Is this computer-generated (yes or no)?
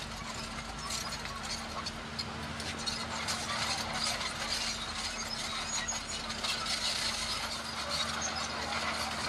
no